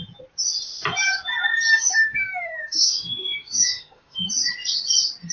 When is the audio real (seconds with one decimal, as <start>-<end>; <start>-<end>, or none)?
0.0-1.7; 4.3-5.3